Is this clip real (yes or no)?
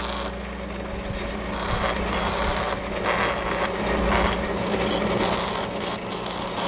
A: yes